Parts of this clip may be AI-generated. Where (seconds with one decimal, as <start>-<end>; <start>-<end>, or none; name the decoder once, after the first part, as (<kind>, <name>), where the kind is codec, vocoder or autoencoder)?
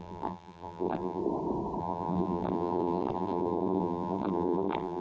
0.0-1.2 (vocoder, BigVGAN v2); 1.8-5.0